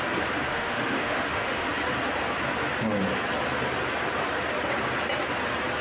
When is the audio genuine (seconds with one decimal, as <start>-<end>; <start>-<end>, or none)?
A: 0.0-0.5; 1.7-5.8